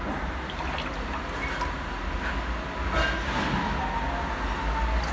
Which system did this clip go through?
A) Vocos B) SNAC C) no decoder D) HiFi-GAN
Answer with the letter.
C